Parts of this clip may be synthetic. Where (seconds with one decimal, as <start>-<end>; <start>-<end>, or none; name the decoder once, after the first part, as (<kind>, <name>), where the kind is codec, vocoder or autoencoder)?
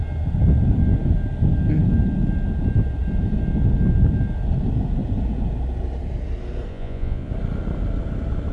6.7-7.3 (vocoder, Vocos)